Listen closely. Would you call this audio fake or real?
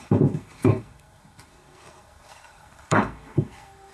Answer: fake